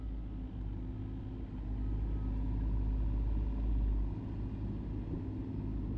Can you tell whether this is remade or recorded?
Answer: recorded